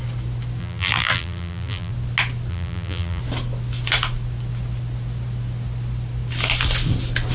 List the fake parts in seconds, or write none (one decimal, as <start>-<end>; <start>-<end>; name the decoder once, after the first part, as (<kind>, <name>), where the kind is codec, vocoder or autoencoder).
0.6-1.9 (vocoder, BigVGAN v2); 2.5-3.2